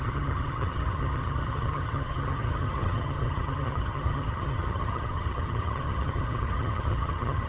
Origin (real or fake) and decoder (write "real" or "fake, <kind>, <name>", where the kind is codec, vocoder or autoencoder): fake, vocoder, HiFi-GAN